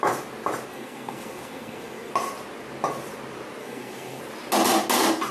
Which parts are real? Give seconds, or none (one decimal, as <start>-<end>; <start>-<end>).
0.0-0.7; 2.1-3.6; 4.2-5.3